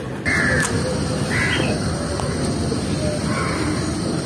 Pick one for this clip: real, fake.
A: real